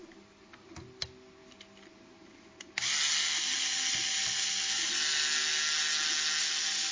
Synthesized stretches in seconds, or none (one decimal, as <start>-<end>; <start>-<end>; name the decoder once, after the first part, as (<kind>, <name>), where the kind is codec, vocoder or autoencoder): none